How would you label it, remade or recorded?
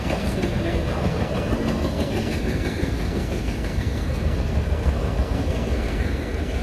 remade